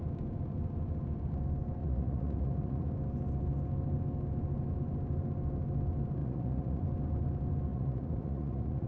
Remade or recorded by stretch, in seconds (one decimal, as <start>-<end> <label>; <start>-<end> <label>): 0.0-1.8 recorded; 1.8-2.9 remade; 2.9-6.2 recorded; 6.2-6.8 remade; 6.8-7.7 recorded; 7.7-8.9 remade